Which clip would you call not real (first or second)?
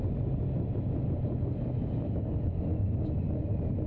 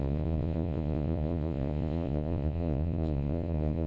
second